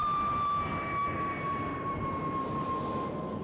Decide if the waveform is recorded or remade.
recorded